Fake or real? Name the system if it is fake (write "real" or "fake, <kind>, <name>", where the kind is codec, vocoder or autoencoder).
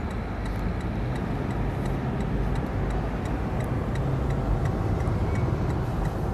real